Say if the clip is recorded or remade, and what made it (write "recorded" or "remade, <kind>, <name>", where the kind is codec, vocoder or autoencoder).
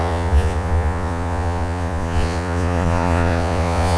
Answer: remade, vocoder, Vocos